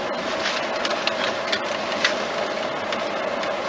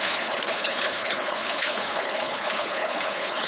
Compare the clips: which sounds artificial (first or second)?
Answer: second